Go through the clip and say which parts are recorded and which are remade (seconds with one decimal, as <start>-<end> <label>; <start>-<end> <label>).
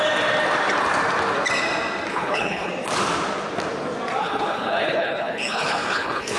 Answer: 0.0-2.1 recorded; 2.1-2.7 remade; 2.7-4.2 recorded; 4.2-6.4 remade